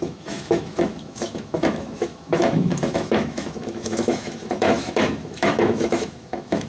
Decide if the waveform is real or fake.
fake